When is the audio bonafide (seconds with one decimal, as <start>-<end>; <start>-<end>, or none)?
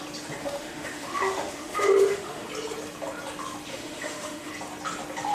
0.0-0.4; 2.5-3.7; 4.5-5.3